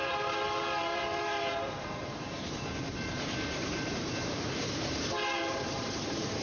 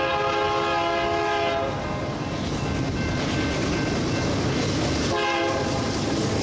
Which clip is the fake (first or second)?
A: first